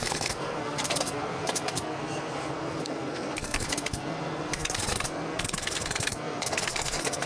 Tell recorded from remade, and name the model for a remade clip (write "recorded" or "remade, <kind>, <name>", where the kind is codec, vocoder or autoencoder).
remade, codec, SNAC